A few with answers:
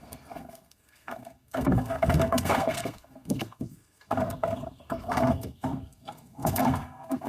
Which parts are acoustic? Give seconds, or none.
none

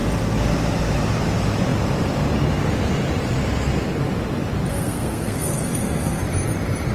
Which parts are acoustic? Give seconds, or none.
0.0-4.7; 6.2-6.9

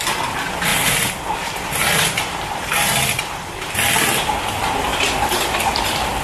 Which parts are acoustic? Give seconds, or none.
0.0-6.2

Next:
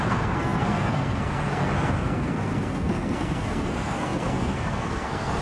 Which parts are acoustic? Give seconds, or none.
none

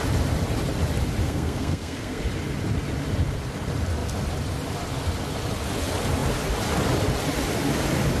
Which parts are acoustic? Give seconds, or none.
0.0-1.2; 2.2-8.2